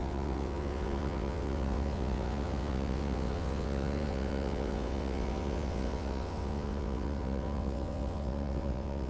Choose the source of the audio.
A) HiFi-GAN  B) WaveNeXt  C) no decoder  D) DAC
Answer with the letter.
B